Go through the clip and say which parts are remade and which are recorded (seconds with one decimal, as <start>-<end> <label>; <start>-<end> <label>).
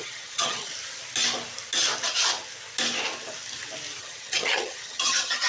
0.0-0.7 remade; 0.7-4.0 recorded; 4.0-5.5 remade